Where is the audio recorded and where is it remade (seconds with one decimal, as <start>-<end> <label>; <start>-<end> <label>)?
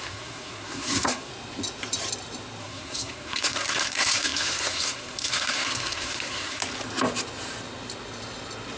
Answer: 0.0-1.3 remade; 1.3-2.6 recorded; 2.6-6.6 remade; 6.6-8.8 recorded